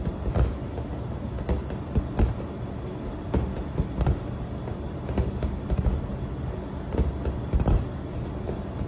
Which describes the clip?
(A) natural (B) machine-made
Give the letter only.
A